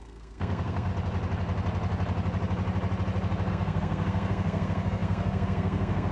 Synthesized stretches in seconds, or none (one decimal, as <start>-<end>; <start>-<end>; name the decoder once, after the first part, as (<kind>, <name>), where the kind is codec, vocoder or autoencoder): 0.0-0.9 (codec, SNAC); 3.5-6.1

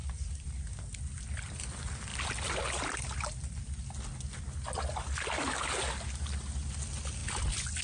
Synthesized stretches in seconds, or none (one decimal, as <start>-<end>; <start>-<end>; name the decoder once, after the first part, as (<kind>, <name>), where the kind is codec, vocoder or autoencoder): 0.0-0.6 (vocoder, BigVGAN v2)

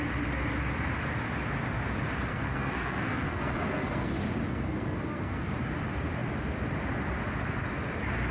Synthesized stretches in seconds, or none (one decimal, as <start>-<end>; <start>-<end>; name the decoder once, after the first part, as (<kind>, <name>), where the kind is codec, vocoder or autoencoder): 2.3-4.1 (codec, SNAC); 4.5-5.5

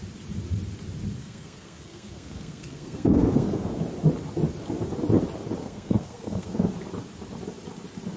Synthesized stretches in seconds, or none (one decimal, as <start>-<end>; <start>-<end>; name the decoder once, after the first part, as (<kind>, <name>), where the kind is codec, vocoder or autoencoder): 1.2-3.8 (codec, SNAC); 5.6-6.7